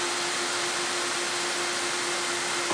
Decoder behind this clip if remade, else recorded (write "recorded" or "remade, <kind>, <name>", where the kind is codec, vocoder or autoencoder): recorded